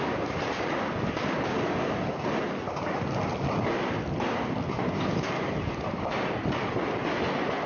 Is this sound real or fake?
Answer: real